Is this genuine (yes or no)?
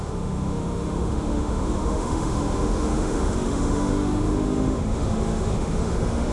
no